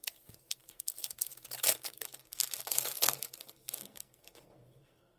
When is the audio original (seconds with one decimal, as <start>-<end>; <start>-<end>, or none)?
none